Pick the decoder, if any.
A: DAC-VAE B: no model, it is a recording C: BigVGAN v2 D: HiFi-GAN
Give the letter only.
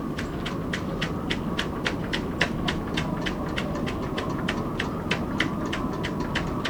B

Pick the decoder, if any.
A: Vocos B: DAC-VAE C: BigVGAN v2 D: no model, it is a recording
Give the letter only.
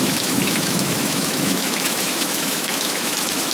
B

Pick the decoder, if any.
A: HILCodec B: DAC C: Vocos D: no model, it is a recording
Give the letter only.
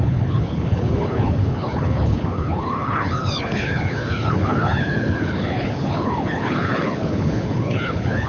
A